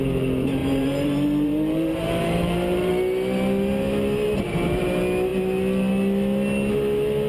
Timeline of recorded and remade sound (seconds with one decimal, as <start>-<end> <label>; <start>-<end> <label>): 0.0-0.6 recorded; 0.6-2.9 remade; 2.9-7.3 recorded

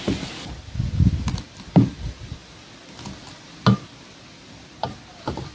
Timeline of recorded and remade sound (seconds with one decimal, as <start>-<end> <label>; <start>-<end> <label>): 0.0-2.4 remade; 2.4-4.7 recorded; 4.7-5.5 remade

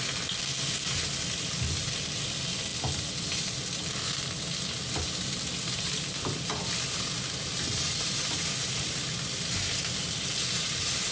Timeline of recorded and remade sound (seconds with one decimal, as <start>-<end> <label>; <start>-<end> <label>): 0.0-11.1 recorded

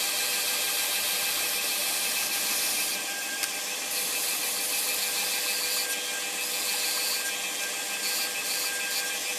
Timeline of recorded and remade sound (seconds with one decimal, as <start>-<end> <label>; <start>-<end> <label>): 0.0-1.8 recorded; 1.8-4.9 remade; 4.9-9.4 recorded